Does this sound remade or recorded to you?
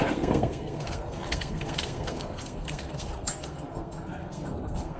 remade